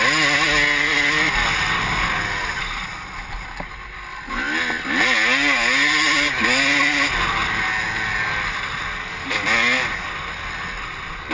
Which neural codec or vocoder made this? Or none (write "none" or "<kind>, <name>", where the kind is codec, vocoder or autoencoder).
none